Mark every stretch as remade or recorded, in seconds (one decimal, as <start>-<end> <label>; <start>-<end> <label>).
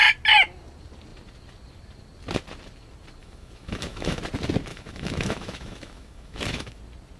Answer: 0.0-3.2 recorded; 3.2-4.2 remade; 4.2-4.7 recorded; 4.7-6.8 remade; 6.8-7.2 recorded